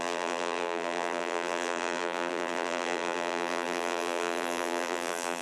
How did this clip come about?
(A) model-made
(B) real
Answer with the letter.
A